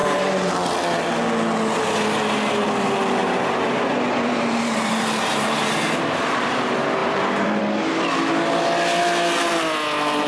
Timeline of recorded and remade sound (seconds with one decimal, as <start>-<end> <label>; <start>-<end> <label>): 0.0-0.5 remade; 0.5-3.2 recorded; 3.2-5.9 remade; 5.9-7.0 recorded; 7.0-7.6 remade; 7.6-10.3 recorded